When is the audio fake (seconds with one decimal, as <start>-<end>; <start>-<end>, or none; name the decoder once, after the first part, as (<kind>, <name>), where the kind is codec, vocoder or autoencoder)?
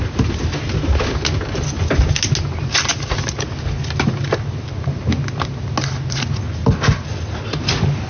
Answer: none